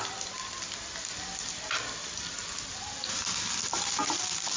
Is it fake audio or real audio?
real